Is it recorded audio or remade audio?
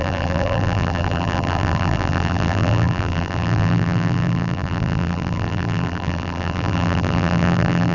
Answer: remade